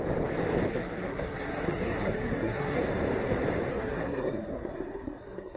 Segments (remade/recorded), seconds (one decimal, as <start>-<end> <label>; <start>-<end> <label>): 0.0-0.7 recorded; 0.7-2.8 remade; 2.8-3.7 recorded; 3.7-5.6 remade

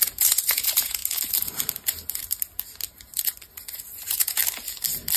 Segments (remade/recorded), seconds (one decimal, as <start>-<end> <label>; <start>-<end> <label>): 0.0-1.0 remade; 1.0-3.8 recorded; 3.8-4.4 remade; 4.4-5.2 recorded

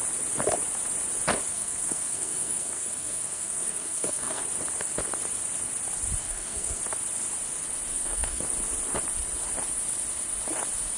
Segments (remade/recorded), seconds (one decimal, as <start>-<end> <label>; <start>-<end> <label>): 0.0-1.5 recorded; 1.5-4.4 remade; 4.4-6.2 recorded; 6.2-6.8 remade; 6.8-7.9 recorded; 7.9-8.4 remade; 8.4-11.0 recorded

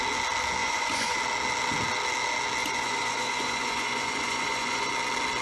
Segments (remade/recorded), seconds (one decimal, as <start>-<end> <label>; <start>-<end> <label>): 0.0-0.6 recorded; 0.6-1.2 remade; 1.2-2.6 recorded; 2.6-4.9 remade; 4.9-5.4 recorded

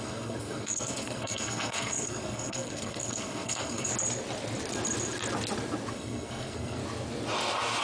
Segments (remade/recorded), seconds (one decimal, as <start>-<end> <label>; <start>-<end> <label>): 0.0-3.9 remade; 3.9-5.9 recorded; 5.9-6.8 remade; 6.8-7.8 recorded

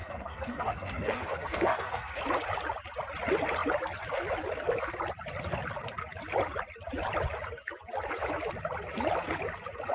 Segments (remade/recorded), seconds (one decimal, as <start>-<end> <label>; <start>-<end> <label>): 0.0-2.2 remade; 2.2-9.9 recorded

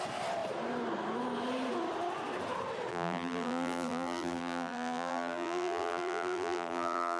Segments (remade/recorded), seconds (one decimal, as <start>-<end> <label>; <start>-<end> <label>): 0.0-2.9 recorded; 2.9-7.2 remade

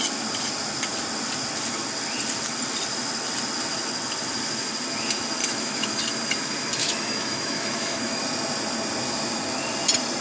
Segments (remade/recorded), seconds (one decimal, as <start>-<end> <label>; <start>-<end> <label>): 0.0-5.4 recorded; 5.4-6.0 remade; 6.0-6.8 recorded; 6.8-8.2 remade; 8.2-10.2 recorded